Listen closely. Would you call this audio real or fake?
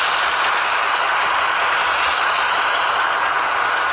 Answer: real